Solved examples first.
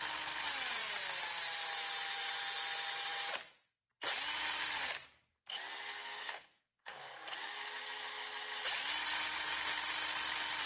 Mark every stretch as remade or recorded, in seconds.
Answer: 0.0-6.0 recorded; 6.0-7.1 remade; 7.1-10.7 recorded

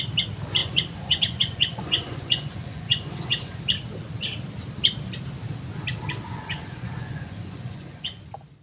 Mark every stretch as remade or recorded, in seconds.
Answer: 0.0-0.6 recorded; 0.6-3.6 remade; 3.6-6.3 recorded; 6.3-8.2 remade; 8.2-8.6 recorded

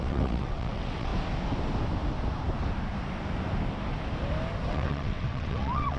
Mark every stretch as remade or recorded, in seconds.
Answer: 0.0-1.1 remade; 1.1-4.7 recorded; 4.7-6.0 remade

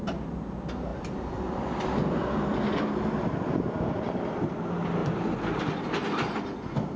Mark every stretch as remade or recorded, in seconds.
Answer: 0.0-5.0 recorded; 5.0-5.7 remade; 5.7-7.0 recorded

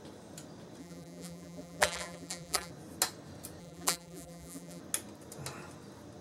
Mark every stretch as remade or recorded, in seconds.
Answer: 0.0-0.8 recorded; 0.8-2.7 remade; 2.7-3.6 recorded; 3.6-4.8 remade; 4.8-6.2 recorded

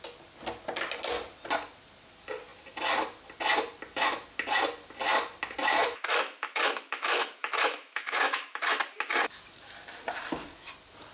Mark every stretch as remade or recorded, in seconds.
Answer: 0.0-5.8 recorded; 5.8-8.6 remade; 8.6-11.1 recorded